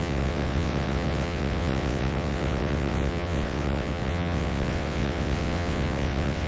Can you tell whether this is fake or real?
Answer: fake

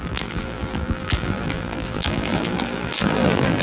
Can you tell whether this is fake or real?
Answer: fake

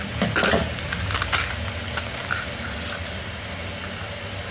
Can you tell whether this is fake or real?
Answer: real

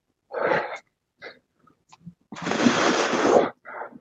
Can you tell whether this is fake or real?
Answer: real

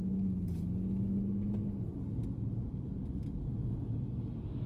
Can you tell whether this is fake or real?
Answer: real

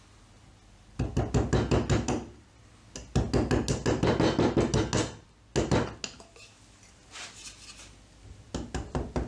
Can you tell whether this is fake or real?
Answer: real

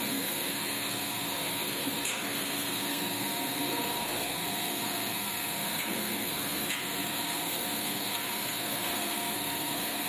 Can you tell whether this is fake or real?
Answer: fake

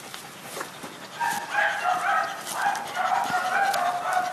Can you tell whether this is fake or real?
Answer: real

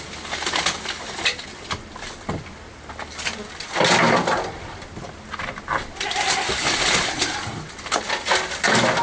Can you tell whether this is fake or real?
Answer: real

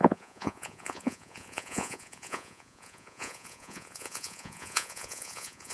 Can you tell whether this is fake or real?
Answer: fake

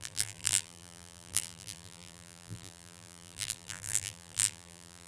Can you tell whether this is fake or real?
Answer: fake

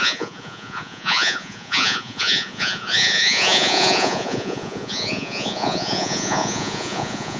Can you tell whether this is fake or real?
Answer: fake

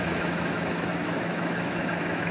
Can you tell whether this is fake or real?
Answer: fake